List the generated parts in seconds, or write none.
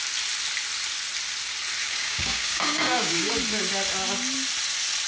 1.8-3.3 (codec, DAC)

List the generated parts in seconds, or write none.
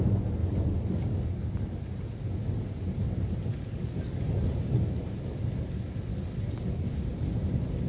0.4-1.6 (codec, DAC); 3.5-4.2; 6.1-7.3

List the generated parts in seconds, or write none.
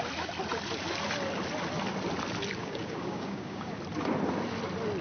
2.6-3.8 (codec, DAC)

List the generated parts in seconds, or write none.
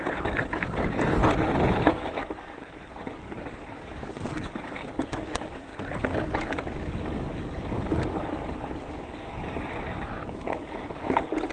0.0-1.2 (codec, DAC); 1.9-11.5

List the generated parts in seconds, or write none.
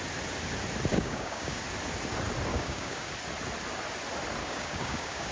0.9-1.6 (codec, DAC); 2.5-3.1; 4.4-5.3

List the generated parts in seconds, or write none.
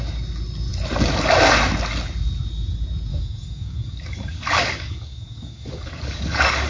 3.1-6.7 (codec, DAC)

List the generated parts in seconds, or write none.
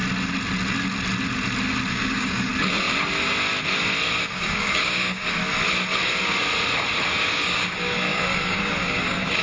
1.9-2.5 (codec, DAC); 4.2-5.4; 7.2-9.4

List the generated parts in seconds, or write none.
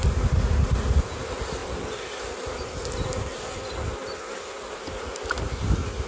none